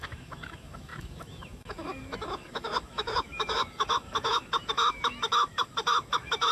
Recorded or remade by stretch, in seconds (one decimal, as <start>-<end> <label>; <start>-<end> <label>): 0.0-6.5 remade